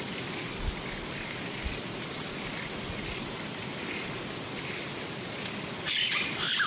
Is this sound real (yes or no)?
yes